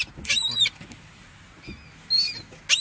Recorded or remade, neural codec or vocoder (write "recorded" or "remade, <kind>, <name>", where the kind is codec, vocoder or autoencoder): recorded